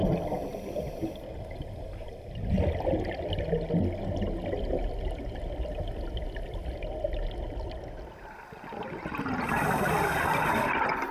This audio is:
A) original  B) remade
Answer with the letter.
A